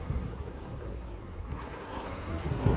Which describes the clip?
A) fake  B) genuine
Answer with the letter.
A